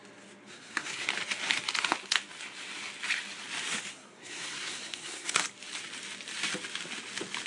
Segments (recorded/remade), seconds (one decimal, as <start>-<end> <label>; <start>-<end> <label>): 0.0-0.5 recorded; 0.5-1.1 remade; 1.1-3.9 recorded; 3.9-5.4 remade; 5.4-7.5 recorded